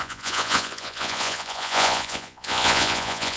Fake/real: fake